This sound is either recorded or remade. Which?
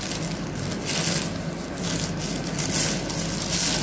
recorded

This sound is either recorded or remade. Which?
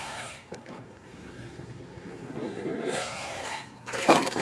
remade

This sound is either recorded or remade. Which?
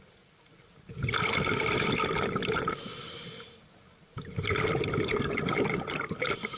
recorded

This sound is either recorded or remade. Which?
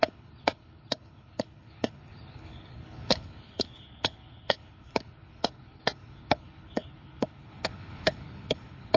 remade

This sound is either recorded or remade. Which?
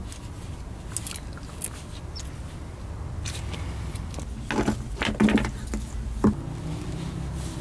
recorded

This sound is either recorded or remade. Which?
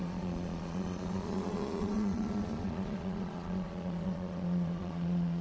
remade